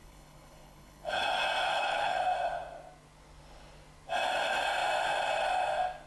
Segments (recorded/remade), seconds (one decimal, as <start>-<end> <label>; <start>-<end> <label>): 0.0-1.2 remade; 1.2-1.7 recorded; 1.7-2.2 remade; 2.2-6.1 recorded